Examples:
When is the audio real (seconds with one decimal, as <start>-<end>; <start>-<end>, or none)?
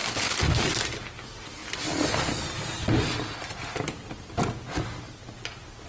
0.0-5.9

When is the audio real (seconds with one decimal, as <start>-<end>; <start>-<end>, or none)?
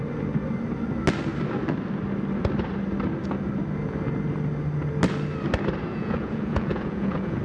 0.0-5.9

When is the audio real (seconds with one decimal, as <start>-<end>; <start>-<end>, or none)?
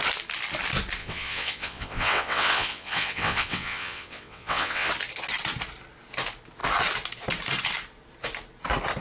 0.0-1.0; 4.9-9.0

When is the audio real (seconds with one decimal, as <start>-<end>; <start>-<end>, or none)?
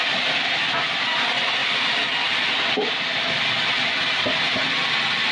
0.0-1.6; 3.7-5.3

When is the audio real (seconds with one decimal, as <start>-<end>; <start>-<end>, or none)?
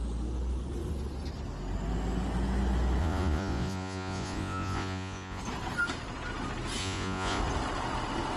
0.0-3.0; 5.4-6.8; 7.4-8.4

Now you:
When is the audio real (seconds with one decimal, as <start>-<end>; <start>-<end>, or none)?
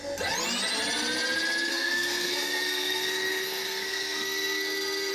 0.0-1.7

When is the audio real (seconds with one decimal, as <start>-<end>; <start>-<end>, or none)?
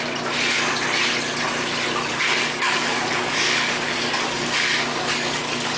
0.0-2.1